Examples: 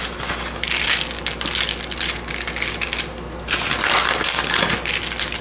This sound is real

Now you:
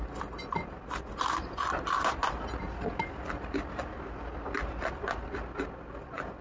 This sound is real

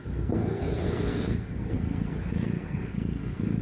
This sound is fake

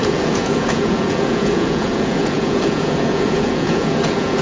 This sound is fake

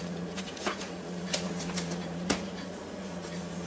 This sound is fake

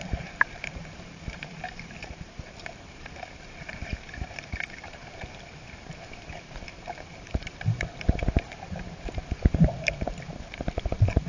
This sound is fake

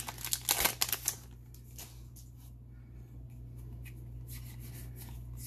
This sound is real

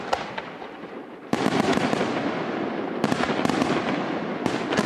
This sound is real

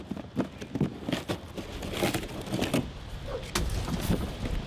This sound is real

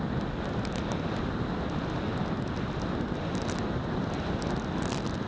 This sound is real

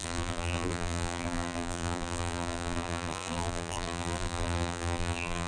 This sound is fake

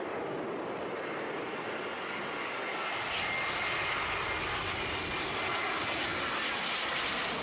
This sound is real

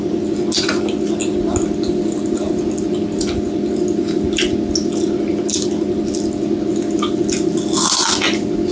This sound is real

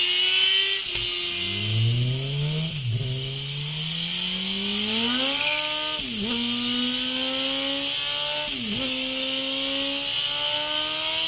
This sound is real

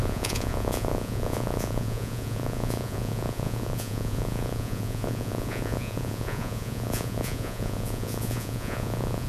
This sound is fake